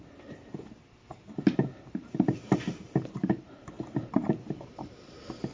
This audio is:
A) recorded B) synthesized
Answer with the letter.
B